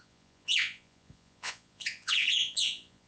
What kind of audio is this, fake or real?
fake